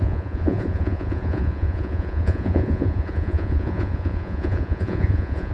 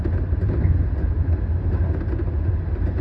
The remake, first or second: first